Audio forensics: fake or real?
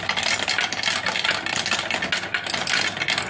real